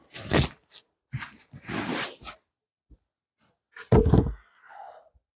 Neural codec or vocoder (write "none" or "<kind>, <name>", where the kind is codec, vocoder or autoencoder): none